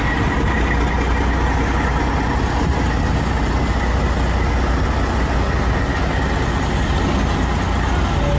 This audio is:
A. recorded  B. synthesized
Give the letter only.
A